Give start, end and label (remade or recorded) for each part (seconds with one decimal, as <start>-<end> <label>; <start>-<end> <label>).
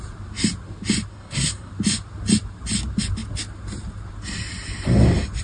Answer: 0.0-1.1 recorded; 1.1-1.7 remade; 1.7-5.4 recorded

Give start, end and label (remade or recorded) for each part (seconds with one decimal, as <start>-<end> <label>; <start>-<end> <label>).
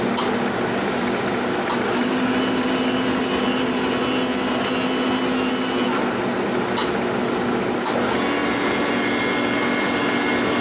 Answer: 0.0-10.6 recorded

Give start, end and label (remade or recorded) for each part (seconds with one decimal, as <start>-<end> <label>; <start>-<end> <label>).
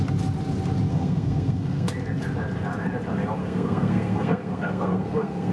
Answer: 0.0-0.9 recorded; 0.9-1.9 remade; 1.9-3.4 recorded; 3.4-5.5 remade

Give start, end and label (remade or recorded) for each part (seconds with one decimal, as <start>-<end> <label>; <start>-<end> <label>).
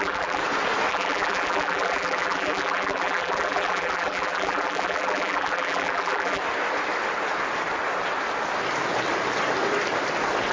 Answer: 0.0-0.4 remade; 0.4-0.9 recorded; 0.9-6.4 remade; 6.4-10.5 recorded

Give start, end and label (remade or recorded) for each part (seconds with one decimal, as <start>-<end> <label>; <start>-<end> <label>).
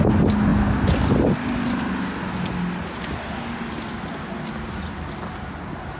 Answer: 0.0-6.0 recorded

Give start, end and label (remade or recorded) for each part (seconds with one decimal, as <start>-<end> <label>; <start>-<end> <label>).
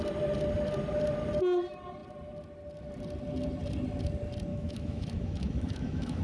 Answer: 0.0-4.5 recorded; 4.5-6.2 remade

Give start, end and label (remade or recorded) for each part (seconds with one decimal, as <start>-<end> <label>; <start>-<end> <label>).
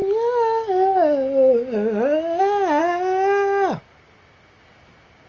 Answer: 0.0-5.3 recorded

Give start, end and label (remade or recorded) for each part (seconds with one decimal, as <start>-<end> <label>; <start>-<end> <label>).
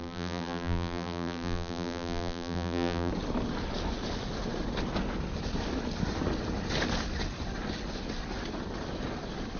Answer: 0.0-3.1 remade; 3.1-9.6 recorded